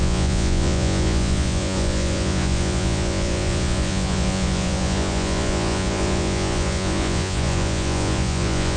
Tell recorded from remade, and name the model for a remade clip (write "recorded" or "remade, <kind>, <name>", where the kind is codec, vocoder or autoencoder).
remade, vocoder, Vocos